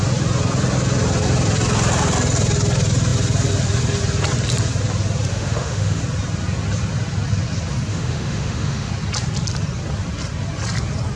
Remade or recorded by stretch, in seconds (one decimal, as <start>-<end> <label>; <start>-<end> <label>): 0.0-5.3 recorded; 5.3-6.0 remade; 6.0-7.9 recorded; 7.9-8.9 remade; 8.9-11.2 recorded